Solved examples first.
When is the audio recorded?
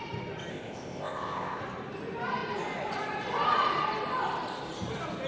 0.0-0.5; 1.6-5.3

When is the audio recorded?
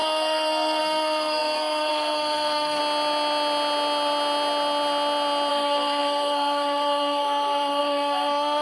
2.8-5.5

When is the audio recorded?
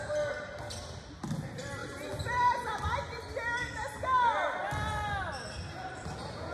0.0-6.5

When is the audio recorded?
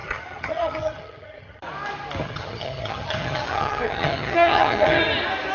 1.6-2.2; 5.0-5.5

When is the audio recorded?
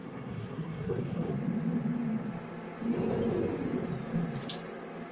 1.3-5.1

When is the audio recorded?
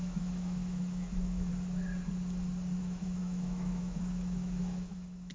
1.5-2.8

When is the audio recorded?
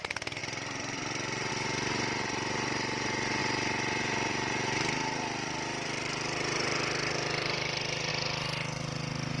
0.0-0.4; 1.5-3.4; 8.1-9.4